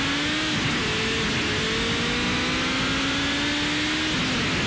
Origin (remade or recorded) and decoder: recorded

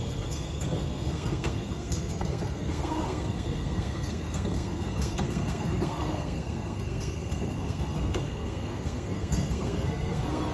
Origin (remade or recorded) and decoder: remade, codec, SNAC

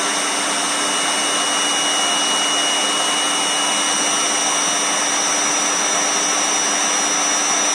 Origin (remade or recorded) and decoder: recorded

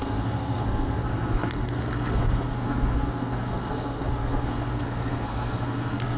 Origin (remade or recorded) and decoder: remade, codec, SNAC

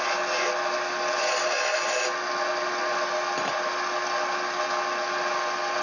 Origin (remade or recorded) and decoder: recorded